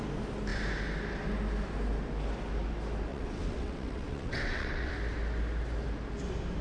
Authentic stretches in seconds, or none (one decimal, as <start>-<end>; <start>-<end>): 0.0-3.1; 4.9-6.6